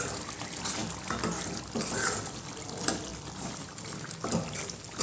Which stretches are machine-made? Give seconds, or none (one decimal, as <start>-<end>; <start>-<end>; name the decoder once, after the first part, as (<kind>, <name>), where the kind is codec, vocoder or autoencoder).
none